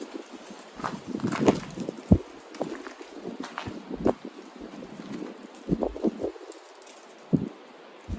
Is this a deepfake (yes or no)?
no